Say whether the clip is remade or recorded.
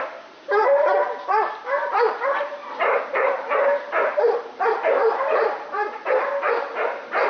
remade